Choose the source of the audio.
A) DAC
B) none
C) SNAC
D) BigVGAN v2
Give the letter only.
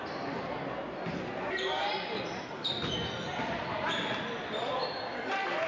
B